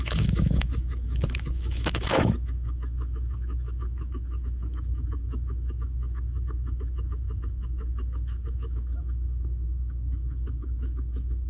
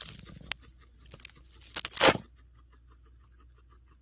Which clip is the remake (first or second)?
first